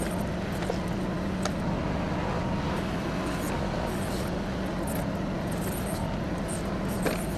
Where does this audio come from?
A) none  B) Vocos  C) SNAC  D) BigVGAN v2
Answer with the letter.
A